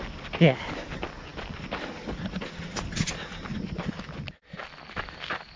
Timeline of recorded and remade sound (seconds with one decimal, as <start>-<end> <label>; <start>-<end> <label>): 0.0-5.6 recorded